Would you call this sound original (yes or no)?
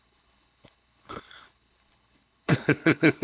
no